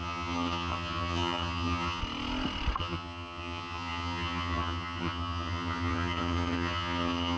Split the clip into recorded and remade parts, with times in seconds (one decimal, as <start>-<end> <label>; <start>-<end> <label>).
0.0-2.0 remade; 2.0-2.8 recorded; 2.8-7.4 remade